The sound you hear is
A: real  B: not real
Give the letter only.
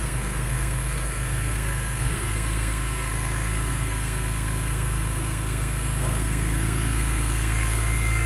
B